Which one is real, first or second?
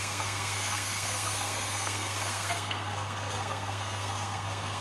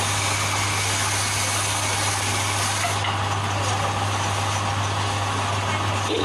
second